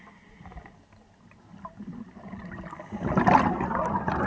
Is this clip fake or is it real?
real